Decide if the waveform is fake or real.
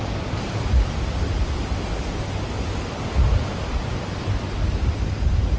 real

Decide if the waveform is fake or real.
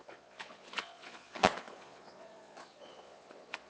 fake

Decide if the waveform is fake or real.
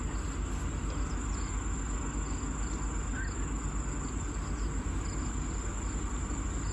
real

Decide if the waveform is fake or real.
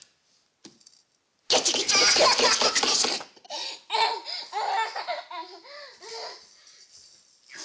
real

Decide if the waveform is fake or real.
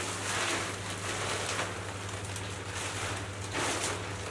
real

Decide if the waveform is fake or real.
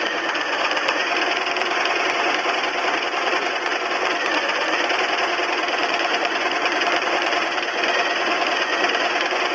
fake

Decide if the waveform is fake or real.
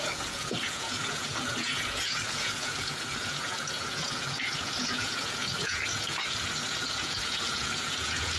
fake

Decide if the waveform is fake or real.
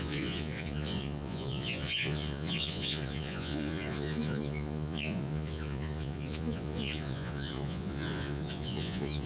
fake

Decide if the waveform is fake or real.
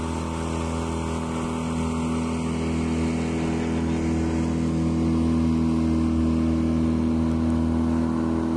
real